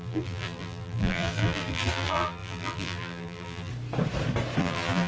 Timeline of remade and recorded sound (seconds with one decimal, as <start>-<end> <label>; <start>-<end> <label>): 0.0-3.7 remade; 3.7-4.6 recorded; 4.6-5.1 remade